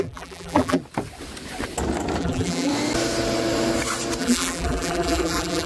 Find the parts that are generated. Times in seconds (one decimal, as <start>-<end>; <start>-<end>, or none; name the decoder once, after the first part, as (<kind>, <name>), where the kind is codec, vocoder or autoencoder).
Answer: 0.0-0.8 (vocoder, BigVGAN v2); 2.2-2.7; 4.2-5.7